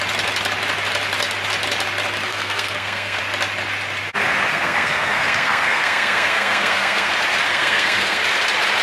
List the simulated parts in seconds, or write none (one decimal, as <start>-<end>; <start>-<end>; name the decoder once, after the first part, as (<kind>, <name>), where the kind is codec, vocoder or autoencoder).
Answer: 2.3-3.2 (codec, SNAC); 4.5-7.1; 7.5-8.2